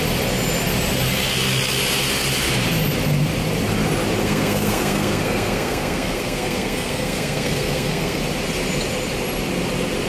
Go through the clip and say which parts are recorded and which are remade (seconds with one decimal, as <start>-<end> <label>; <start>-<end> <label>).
0.0-4.2 recorded; 4.2-8.2 remade; 8.2-10.1 recorded